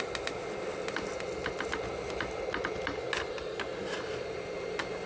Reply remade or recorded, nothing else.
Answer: recorded